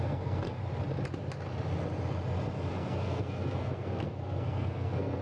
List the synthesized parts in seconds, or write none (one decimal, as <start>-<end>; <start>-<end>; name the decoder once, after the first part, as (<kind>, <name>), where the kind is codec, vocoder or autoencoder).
0.0-0.6 (codec, SNAC); 2.7-5.2